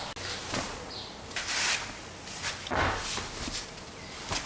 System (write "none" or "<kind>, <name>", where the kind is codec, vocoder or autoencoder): none